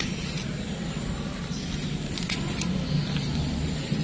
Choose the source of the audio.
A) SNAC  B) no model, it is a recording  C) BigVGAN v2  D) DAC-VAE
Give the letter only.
B